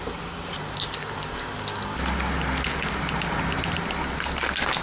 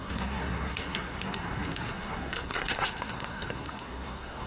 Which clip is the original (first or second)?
first